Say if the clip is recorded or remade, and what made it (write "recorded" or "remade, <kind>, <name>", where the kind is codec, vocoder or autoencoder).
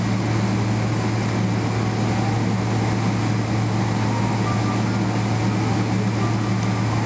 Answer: recorded